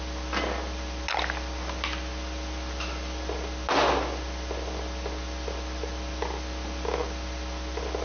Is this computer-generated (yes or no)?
no